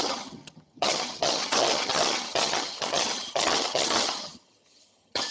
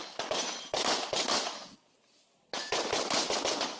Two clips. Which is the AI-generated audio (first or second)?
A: first